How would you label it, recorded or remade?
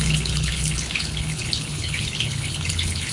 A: remade